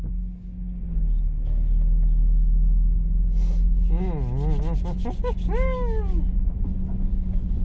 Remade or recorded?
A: recorded